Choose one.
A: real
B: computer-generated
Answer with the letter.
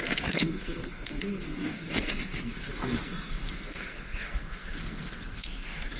B